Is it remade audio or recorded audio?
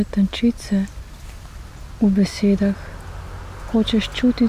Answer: recorded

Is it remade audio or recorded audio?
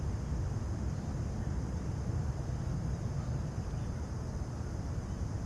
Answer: recorded